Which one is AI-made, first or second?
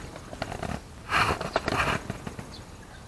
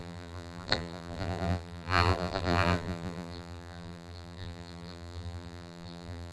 second